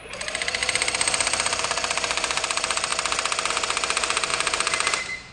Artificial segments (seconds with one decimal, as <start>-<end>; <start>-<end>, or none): 0.0-2.9; 3.5-5.3